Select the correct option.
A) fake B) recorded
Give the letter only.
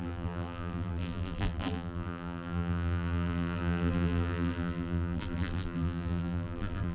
A